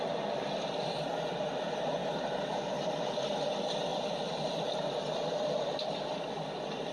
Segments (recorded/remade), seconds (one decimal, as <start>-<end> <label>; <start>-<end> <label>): 0.0-2.0 recorded; 2.0-2.7 remade; 2.7-3.9 recorded; 3.9-4.5 remade; 4.5-6.9 recorded